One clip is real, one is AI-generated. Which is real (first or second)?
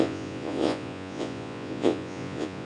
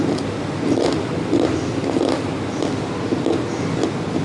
second